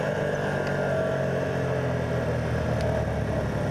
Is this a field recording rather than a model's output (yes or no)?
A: yes